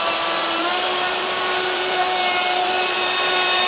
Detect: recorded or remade remade